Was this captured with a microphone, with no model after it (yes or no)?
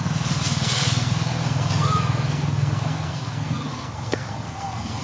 no